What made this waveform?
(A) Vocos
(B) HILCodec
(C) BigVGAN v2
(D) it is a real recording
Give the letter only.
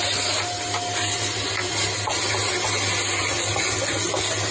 D